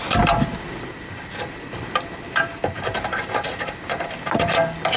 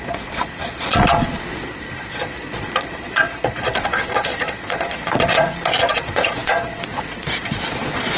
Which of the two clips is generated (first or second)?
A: second